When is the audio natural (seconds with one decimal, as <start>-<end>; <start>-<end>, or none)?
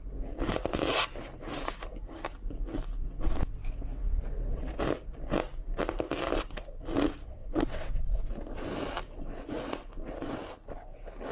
0.0-3.9; 4.7-7.4; 8.3-11.3